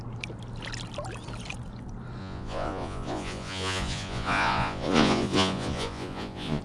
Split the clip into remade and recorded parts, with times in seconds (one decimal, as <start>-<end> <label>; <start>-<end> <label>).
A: 0.0-2.2 recorded; 2.2-6.6 remade